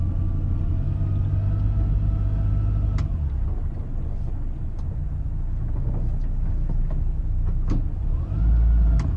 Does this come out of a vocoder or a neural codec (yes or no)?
no